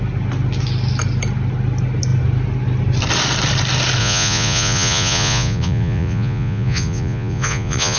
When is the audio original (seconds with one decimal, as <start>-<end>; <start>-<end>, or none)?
0.0-4.0